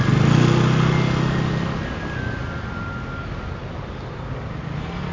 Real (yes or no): yes